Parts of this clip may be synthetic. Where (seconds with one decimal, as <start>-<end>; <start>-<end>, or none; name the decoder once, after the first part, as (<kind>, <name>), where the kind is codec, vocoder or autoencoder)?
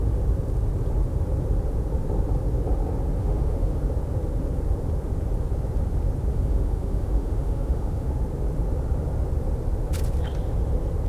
3.2-3.8 (autoencoder, DAC-VAE); 6.3-8.1